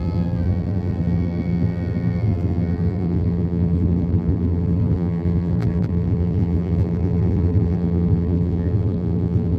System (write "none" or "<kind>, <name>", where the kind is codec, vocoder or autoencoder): vocoder, BigVGAN v2